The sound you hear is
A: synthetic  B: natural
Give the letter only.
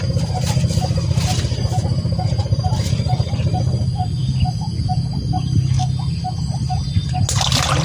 B